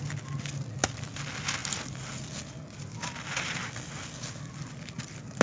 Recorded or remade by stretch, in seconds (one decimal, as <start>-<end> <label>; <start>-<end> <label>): 0.0-5.4 recorded